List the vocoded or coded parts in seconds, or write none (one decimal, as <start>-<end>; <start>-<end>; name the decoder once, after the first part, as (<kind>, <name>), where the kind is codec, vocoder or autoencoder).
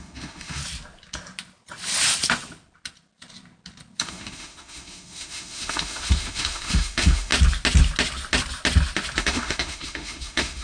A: 0.0-0.6 (autoencoder, DAC-VAE); 4.0-7.3; 9.2-10.6